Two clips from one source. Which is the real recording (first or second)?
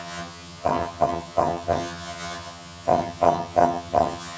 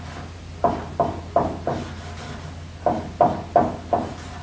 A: second